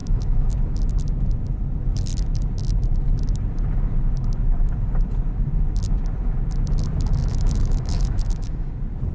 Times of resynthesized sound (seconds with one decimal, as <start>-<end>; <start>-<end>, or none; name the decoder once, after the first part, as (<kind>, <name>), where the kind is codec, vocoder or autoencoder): 0.0-0.5 (autoencoder, DAC-VAE); 7.2-8.7